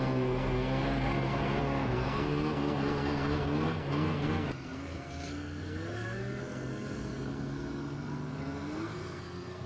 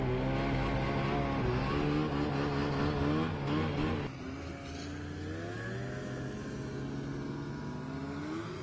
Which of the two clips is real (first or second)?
second